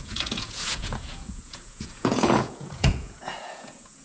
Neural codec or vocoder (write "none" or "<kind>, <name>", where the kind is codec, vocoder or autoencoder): vocoder, Vocos